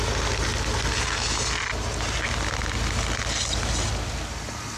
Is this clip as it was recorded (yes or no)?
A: yes